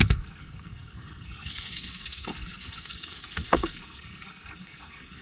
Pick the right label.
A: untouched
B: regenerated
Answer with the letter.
B